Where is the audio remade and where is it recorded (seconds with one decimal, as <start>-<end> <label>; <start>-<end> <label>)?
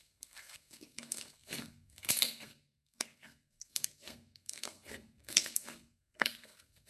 0.0-6.9 remade